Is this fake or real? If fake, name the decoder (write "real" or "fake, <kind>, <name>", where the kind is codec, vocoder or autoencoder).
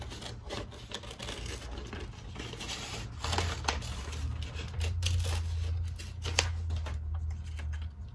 real